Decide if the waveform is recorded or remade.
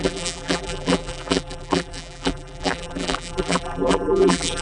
remade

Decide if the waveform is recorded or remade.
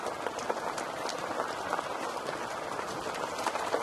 recorded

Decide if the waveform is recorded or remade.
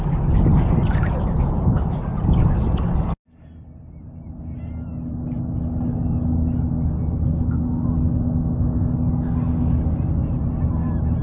recorded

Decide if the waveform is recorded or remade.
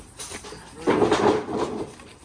recorded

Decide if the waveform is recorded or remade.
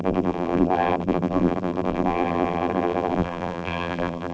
remade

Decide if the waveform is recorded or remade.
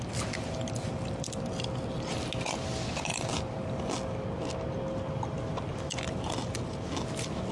recorded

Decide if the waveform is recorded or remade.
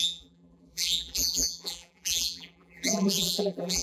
remade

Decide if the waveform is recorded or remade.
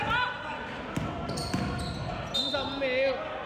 recorded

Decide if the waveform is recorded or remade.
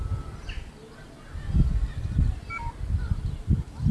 recorded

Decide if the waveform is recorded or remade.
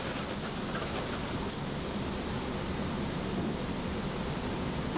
remade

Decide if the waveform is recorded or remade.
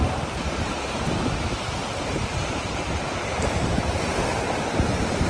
remade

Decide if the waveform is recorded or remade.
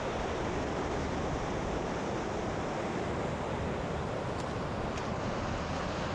recorded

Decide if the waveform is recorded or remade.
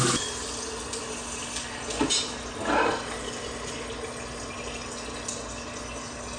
recorded